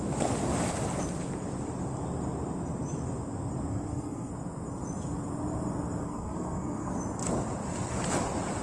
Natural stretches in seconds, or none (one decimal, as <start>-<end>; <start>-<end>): 0.0-3.7; 4.3-6.0; 7.0-8.6